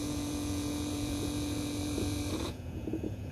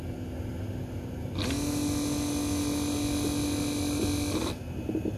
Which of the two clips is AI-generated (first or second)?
first